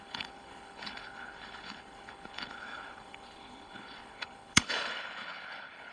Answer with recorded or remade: remade